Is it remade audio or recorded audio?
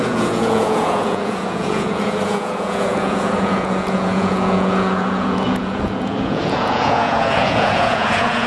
remade